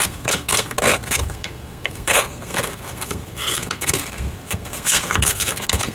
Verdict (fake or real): fake